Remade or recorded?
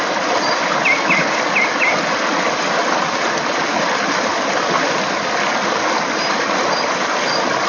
recorded